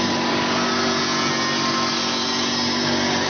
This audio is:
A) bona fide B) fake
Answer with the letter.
A